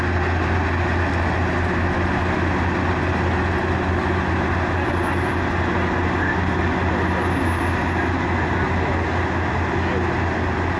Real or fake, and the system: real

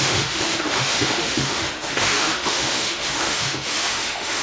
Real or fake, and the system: fake, autoencoder, DAC-VAE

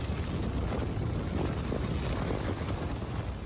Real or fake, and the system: real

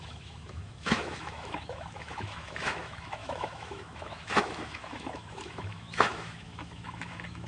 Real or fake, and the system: fake, autoencoder, DAC-VAE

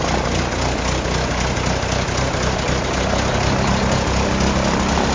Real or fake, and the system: real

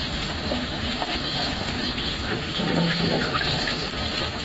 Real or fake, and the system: fake, autoencoder, DAC-VAE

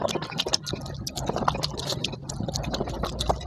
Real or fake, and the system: real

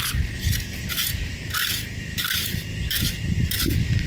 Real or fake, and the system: real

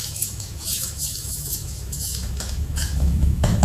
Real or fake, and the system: fake, autoencoder, DAC-VAE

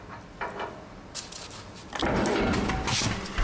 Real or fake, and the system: real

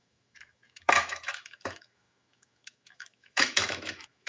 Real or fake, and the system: fake, autoencoder, DAC-VAE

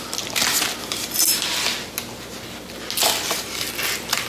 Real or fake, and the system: real